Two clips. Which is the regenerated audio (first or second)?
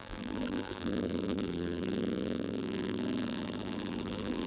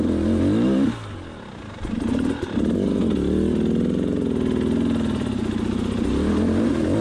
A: first